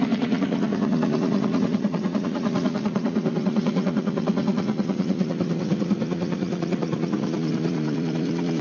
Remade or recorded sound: remade